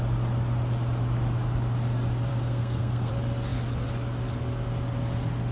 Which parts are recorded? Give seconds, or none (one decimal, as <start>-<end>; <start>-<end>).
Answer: 0.0-2.3; 3.1-5.5